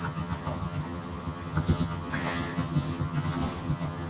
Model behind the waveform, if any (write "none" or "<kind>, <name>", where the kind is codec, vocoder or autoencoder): vocoder, HiFi-GAN